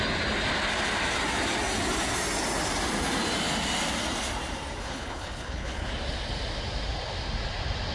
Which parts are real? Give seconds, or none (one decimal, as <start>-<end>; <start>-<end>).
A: 0.0-4.8; 5.9-7.9